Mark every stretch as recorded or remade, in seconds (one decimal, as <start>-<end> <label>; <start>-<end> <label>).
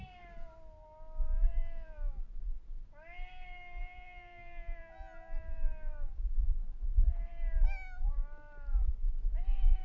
0.0-1.5 recorded; 1.5-2.3 remade; 2.3-3.8 recorded; 3.8-6.1 remade; 6.1-9.8 recorded